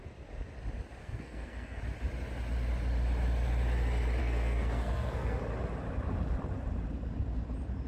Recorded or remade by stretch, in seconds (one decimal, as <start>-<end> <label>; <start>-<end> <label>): 0.0-1.0 recorded; 1.0-1.8 remade; 1.8-4.2 recorded; 4.2-5.4 remade; 5.4-7.9 recorded